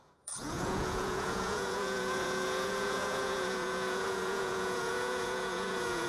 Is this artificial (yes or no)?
yes